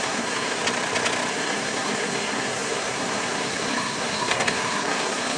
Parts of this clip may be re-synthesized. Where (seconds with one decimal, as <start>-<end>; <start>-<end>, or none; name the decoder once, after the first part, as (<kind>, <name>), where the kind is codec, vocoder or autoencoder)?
0.0-0.6 (codec, SNAC); 1.3-5.4